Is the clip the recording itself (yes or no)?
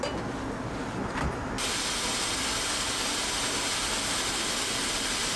yes